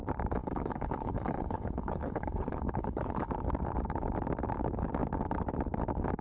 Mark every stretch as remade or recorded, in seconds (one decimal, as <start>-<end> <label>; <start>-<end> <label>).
0.0-0.4 recorded; 0.4-3.3 remade; 3.3-6.2 recorded